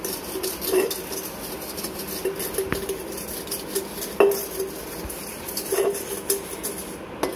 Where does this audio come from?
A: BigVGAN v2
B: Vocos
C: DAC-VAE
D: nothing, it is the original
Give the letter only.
D